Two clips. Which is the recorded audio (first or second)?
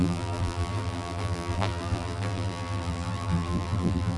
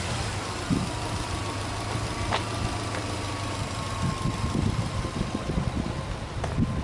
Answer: second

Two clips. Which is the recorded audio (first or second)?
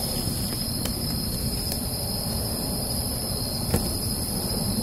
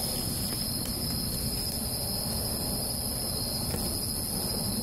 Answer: second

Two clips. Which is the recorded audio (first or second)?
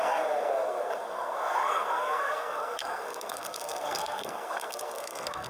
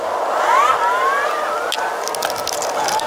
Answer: second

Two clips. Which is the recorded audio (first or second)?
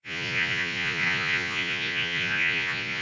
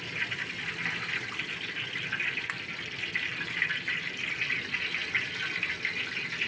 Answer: second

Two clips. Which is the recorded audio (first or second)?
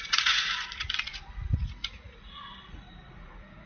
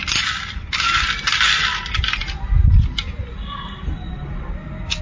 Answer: second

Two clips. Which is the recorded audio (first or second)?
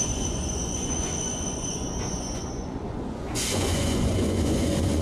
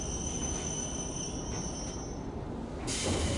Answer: second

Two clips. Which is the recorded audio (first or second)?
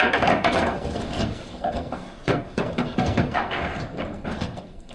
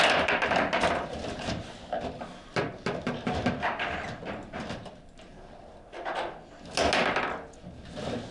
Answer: second